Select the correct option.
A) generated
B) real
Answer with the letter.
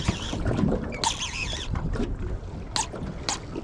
B